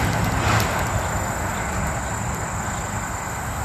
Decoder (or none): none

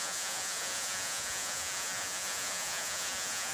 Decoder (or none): vocoder, Vocos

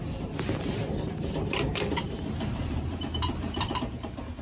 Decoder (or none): vocoder, BigVGAN v2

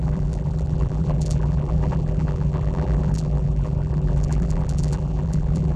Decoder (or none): vocoder, BigVGAN v2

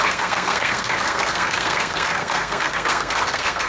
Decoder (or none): codec, SNAC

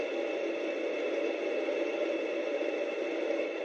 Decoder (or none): none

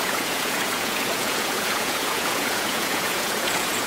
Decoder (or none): vocoder, Vocos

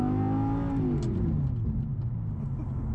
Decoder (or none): none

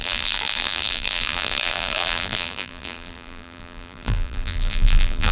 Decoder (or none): vocoder, BigVGAN v2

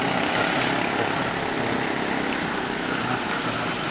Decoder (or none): none